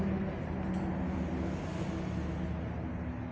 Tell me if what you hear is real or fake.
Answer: real